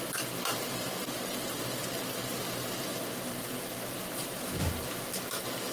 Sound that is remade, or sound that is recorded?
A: recorded